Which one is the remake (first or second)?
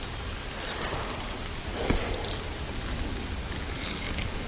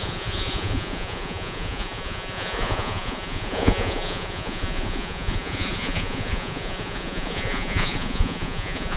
second